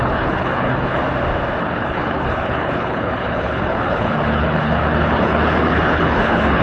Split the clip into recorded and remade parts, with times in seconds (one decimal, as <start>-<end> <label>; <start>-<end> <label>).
0.0-1.0 remade; 1.0-1.6 recorded; 1.6-6.6 remade